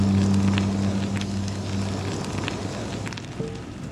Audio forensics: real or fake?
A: real